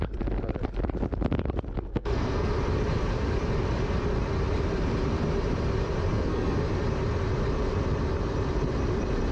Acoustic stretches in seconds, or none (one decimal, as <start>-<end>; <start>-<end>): 0.0-1.9; 2.5-6.1; 6.6-9.3